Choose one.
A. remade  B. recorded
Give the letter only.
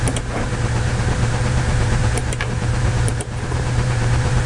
A